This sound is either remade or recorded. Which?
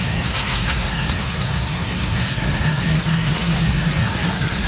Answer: remade